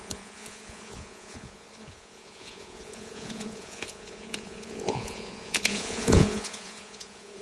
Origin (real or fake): fake